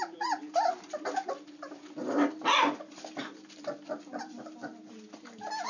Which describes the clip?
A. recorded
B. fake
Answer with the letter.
A